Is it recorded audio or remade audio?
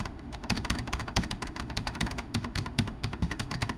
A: remade